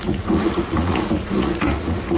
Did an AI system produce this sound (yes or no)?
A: yes